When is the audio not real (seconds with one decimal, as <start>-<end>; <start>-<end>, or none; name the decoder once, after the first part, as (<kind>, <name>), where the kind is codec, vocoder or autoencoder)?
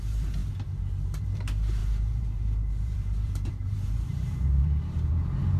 1.8-5.1 (vocoder, BigVGAN v2)